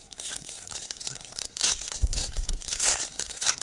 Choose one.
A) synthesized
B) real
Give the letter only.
A